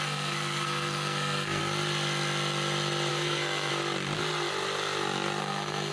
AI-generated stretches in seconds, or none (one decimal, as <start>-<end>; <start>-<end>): 0.0-1.6; 3.1-3.7; 5.4-5.9